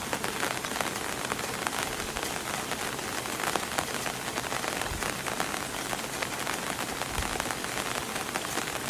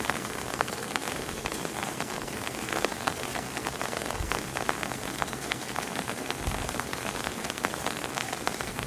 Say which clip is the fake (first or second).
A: second